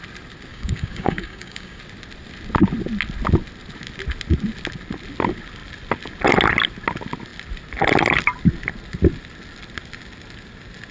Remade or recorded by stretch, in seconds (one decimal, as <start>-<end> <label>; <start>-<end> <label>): 0.0-0.5 recorded; 0.5-1.8 remade; 1.8-10.9 recorded